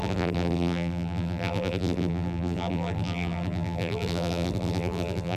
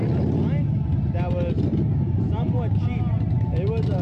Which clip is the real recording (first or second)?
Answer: second